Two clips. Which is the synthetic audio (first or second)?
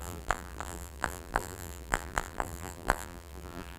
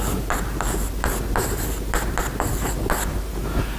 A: first